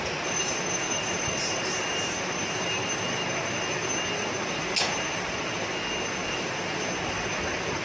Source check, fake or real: real